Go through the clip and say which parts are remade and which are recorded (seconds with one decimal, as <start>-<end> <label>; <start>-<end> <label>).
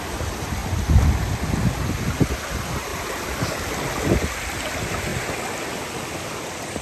0.0-2.9 recorded; 2.9-3.5 remade; 3.5-5.1 recorded; 5.1-5.6 remade; 5.6-6.8 recorded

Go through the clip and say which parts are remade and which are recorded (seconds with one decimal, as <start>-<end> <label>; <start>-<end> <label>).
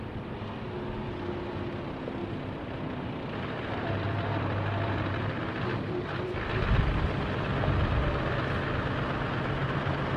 0.0-2.2 recorded; 2.2-5.4 remade; 5.4-9.6 recorded; 9.6-10.2 remade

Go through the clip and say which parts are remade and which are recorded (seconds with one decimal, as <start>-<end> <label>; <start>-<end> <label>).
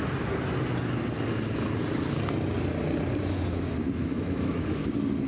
0.0-4.0 recorded; 4.0-4.8 remade; 4.8-5.3 recorded